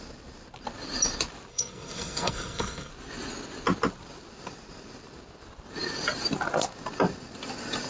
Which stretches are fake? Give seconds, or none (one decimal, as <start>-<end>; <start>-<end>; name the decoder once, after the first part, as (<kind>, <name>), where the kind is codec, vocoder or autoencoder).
1.5-2.9 (codec, SNAC)